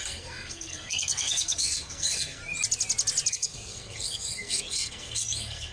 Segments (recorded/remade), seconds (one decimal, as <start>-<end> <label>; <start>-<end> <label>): 0.0-2.4 remade; 2.4-3.3 recorded; 3.3-5.7 remade